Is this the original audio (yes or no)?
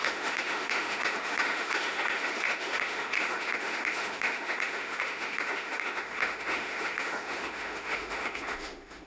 no